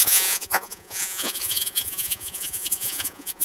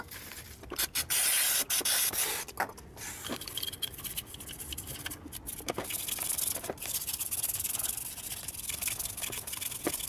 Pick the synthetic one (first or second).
first